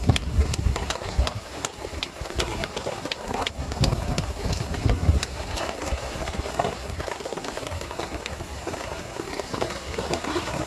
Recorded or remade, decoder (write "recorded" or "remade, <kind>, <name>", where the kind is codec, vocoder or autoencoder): remade, codec, SNAC